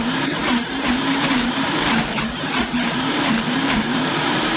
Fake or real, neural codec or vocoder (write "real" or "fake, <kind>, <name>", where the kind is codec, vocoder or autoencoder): fake, vocoder, BigVGAN v2